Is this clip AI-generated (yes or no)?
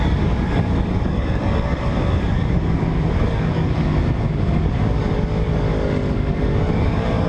yes